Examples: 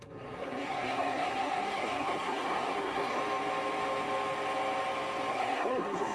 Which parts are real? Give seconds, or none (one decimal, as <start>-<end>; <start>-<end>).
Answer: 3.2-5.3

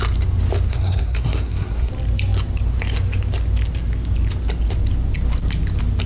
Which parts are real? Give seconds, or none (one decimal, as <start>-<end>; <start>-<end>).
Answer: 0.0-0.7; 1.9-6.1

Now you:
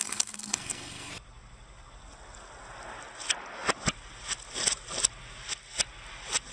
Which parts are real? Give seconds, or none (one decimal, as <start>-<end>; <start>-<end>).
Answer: 1.1-6.5

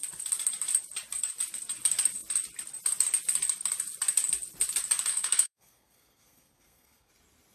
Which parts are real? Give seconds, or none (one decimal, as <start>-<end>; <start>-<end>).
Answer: 0.0-5.1; 7.1-7.5

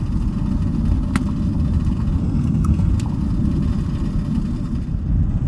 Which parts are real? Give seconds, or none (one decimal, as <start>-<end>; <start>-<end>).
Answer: 0.0-2.2; 2.9-5.5

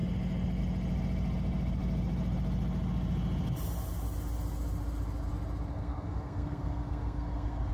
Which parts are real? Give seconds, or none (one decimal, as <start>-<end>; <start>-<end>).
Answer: 0.0-5.7

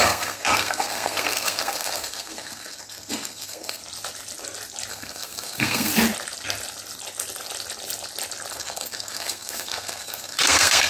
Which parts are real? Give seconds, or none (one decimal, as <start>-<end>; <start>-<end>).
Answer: 3.8-4.9; 5.9-8.5

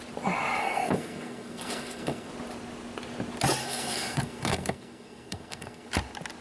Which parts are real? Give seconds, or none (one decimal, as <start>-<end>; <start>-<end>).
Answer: 0.0-0.6; 2.3-3.6; 5.9-6.4